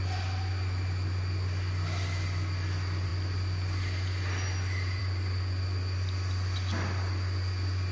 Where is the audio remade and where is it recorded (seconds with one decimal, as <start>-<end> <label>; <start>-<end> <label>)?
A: 0.0-7.9 recorded